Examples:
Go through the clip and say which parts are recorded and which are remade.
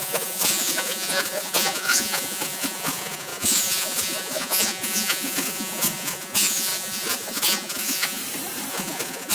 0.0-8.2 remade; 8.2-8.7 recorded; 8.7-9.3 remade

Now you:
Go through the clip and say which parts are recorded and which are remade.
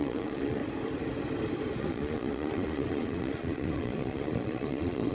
0.0-0.6 remade; 0.6-1.8 recorded; 1.8-5.1 remade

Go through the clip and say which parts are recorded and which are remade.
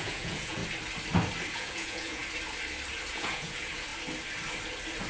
0.0-0.6 remade; 0.6-1.5 recorded; 1.5-2.2 remade; 2.2-3.1 recorded; 3.1-3.9 remade; 3.9-5.1 recorded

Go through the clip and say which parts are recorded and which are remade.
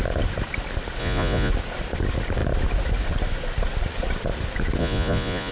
0.0-1.0 recorded; 1.0-1.5 remade; 1.5-4.8 recorded; 4.8-5.5 remade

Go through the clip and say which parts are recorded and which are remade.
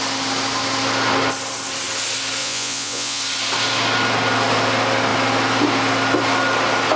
0.0-2.4 recorded; 2.4-3.2 remade; 3.2-7.0 recorded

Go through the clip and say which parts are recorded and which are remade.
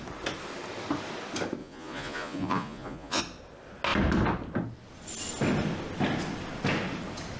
0.0-1.6 recorded; 1.6-3.2 remade; 3.2-7.4 recorded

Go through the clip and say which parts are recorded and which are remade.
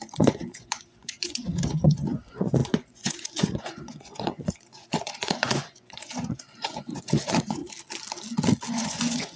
0.0-7.6 remade; 7.6-8.7 recorded; 8.7-9.4 remade